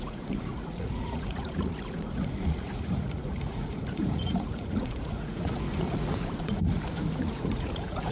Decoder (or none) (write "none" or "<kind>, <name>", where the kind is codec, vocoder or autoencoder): vocoder, Vocos